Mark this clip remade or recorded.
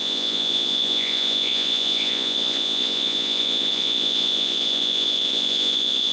remade